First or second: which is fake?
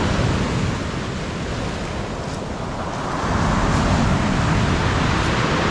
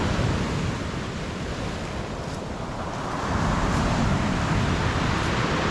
second